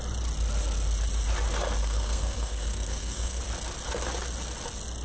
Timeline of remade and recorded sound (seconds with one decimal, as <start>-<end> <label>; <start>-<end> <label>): 0.0-1.8 recorded; 1.8-3.4 remade; 3.4-5.0 recorded